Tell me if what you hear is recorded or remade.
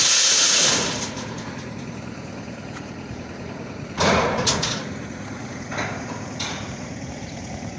remade